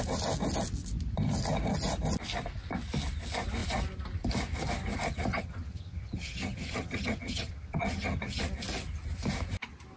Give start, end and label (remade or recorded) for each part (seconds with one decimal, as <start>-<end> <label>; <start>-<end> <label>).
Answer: 0.0-5.3 recorded; 5.3-8.4 remade; 8.4-10.0 recorded